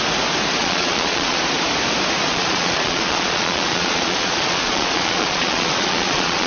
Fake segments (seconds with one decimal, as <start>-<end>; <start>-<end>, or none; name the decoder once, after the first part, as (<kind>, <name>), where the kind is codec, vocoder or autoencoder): 0.6-1.4 (vocoder, Vocos); 2.3-6.5